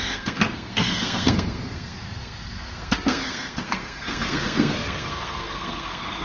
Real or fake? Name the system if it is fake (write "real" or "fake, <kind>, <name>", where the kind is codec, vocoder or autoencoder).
fake, codec, SNAC